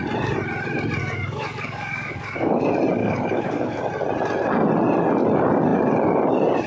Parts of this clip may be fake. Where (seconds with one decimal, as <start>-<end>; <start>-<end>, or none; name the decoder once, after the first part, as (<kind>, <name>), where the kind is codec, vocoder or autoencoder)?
1.0-2.6 (codec, DAC); 3.0-3.8